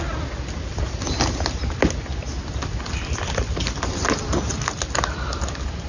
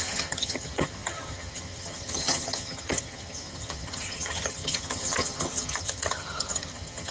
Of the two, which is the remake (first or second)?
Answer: second